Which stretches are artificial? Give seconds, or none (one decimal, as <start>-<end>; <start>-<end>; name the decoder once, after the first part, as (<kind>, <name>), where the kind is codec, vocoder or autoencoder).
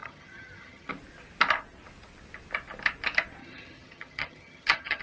0.0-0.9 (vocoder, HiFi-GAN); 3.4-5.0